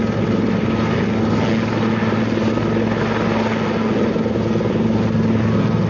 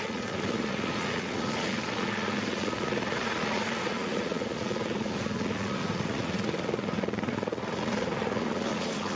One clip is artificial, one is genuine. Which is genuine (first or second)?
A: first